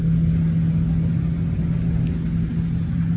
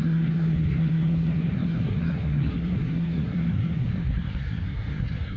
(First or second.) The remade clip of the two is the second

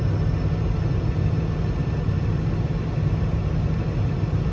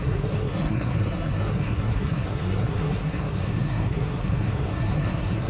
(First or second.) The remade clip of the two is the second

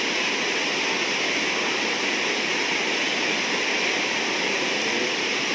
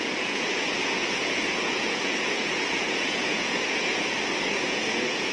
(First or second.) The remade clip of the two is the second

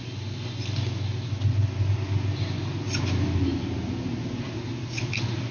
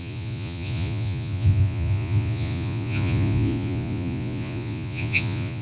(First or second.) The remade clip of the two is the second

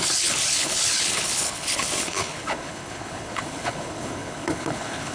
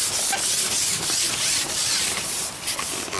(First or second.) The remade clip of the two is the first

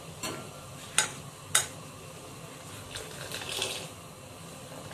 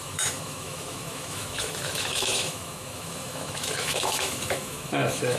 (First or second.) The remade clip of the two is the second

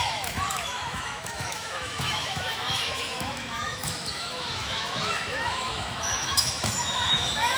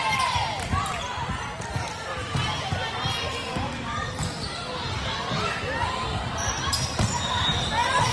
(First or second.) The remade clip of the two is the first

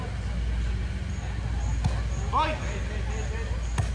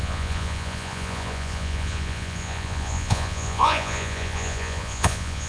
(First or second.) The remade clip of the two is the second